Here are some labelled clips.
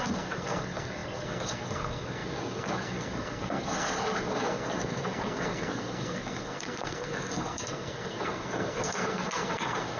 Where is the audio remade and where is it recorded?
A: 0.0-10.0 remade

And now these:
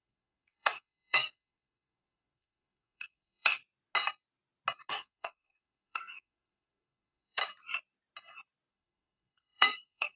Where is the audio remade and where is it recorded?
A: 0.0-3.6 remade; 3.6-4.9 recorded; 4.9-7.4 remade; 7.4-8.7 recorded; 8.7-10.2 remade

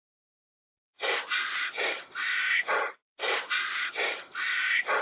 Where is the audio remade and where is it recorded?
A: 0.0-5.0 recorded

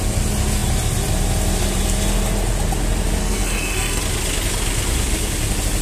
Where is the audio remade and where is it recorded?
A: 0.0-3.2 recorded; 3.2-4.0 remade; 4.0-5.8 recorded

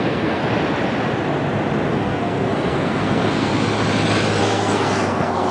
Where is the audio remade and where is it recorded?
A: 0.0-0.4 remade; 0.4-1.9 recorded; 1.9-3.5 remade; 3.5-4.4 recorded; 4.4-5.5 remade

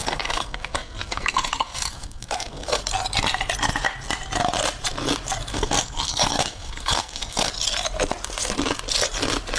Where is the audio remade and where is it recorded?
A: 0.0-2.8 remade; 2.8-5.5 recorded; 5.5-7.5 remade; 7.5-9.6 recorded